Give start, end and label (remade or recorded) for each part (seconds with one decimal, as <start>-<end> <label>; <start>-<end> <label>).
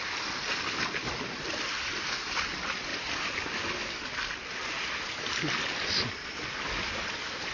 0.0-7.5 recorded